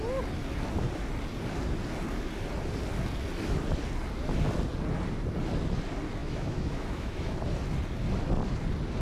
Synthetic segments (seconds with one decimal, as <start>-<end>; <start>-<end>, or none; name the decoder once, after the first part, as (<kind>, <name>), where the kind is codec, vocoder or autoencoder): 6.2-7.4 (autoencoder, DAC-VAE)